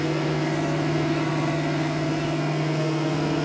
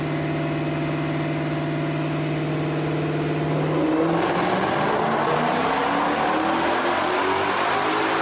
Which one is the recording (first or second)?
second